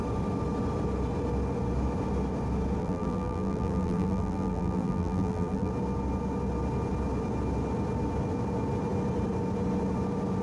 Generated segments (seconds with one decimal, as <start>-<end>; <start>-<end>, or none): 2.8-5.7